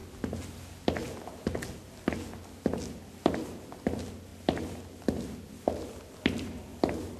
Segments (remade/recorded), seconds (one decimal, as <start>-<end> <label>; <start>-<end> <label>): 0.0-7.2 recorded